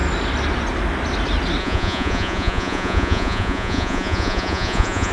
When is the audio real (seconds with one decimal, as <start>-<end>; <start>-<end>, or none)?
0.0-1.6